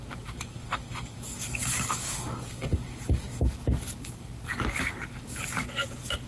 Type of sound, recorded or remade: remade